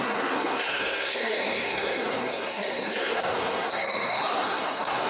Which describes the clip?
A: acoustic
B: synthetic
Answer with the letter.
B